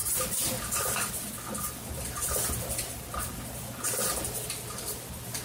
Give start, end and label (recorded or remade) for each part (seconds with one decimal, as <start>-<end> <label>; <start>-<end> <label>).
0.0-1.1 recorded; 1.1-5.4 remade